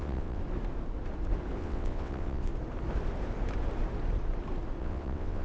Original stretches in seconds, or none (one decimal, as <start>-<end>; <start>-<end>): 0.4-1.6; 2.5-4.8